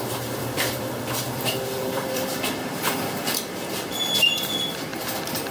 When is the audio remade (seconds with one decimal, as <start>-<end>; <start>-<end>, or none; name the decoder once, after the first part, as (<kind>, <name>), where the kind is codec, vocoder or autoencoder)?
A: 0.0-5.5 (vocoder, BigVGAN v2)